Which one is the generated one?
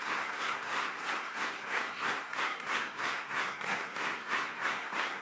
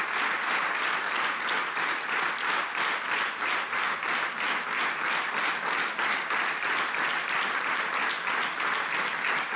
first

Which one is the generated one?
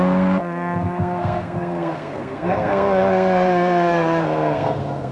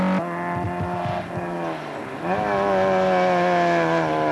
first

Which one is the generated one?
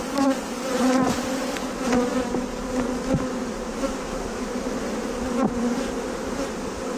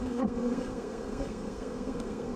second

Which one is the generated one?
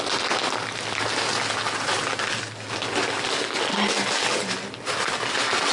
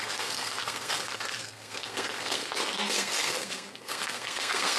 second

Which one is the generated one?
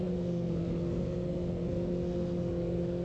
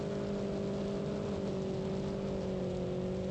first